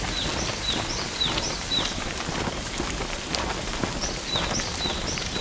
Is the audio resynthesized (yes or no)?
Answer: no